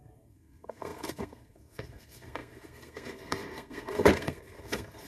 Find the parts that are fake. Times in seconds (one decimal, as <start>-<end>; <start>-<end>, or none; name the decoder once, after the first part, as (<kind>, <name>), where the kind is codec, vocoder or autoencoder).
0.0-5.1 (codec, SNAC)